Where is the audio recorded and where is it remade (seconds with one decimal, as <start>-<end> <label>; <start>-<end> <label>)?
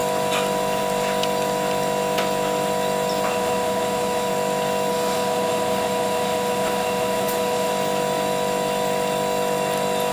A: 0.0-3.3 recorded; 3.3-4.3 remade; 4.3-4.9 recorded; 4.9-7.7 remade; 7.7-10.1 recorded